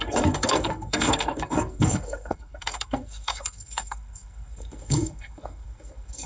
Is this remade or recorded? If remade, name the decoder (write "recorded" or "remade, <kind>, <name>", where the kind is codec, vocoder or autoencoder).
remade, codec, SNAC